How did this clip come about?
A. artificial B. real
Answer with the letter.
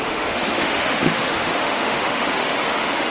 A